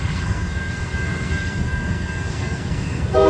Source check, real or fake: fake